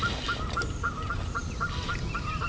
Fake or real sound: real